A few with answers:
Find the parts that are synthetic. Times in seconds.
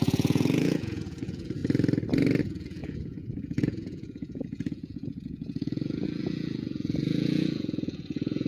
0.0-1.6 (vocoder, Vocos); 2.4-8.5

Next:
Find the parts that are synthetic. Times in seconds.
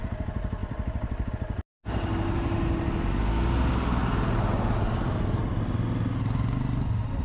0.6-1.3 (vocoder, BigVGAN v2)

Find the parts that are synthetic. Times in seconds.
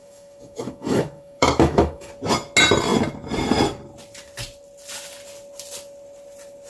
0.0-2.1 (autoencoder, DAC-VAE)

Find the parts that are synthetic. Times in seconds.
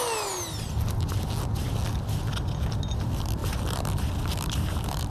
none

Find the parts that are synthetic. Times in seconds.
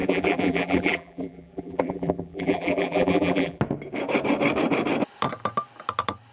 0.0-3.6 (vocoder, BigVGAN v2)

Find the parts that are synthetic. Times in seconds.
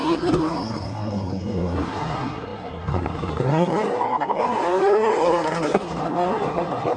0.0-7.0 (codec, SNAC)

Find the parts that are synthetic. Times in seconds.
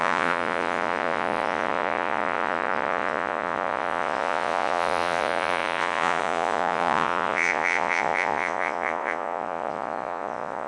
0.0-10.7 (vocoder, Vocos)